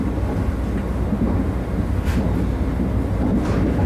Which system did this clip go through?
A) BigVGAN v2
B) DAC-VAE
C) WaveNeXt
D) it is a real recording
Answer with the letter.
D